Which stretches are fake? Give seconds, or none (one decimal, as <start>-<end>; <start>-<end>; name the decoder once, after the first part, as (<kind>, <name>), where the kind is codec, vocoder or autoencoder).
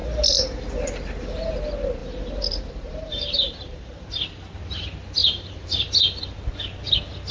2.0-4.1 (vocoder, BigVGAN v2); 5.2-6.4